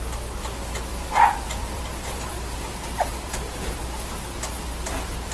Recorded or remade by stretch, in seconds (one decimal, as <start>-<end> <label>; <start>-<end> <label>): 0.0-0.9 recorded; 0.9-4.1 remade; 4.1-5.3 recorded